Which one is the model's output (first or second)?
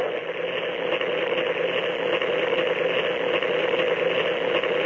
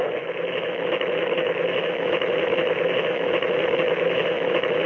second